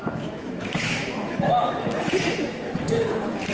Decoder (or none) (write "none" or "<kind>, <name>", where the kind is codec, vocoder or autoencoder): autoencoder, DAC-VAE